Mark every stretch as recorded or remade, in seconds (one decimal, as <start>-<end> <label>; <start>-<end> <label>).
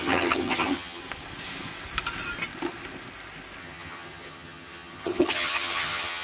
0.0-1.0 remade; 1.0-3.6 recorded; 3.6-6.2 remade